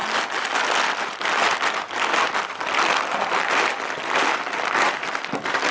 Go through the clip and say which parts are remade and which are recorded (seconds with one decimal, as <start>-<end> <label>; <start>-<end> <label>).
0.0-5.7 recorded